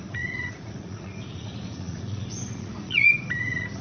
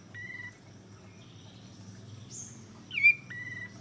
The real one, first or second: second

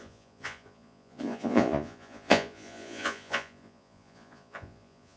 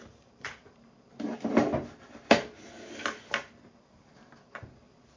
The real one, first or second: second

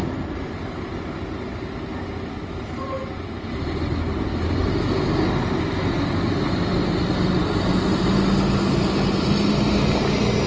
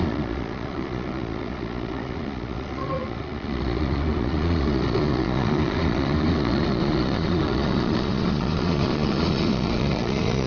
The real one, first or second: first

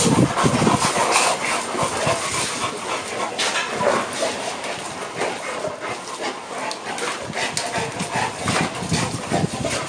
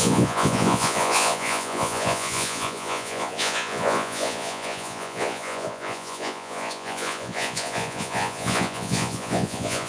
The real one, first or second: first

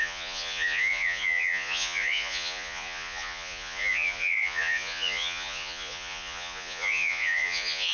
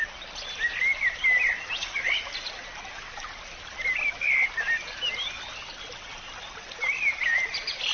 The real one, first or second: second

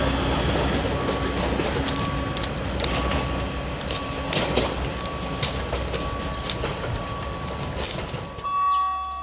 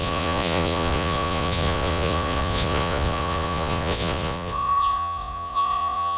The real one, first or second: first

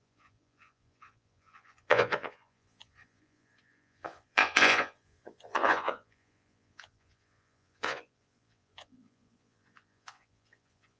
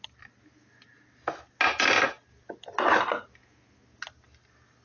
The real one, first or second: second